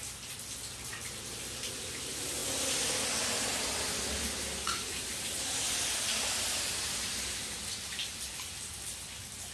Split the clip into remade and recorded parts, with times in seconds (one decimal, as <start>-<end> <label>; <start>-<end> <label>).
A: 0.0-9.5 recorded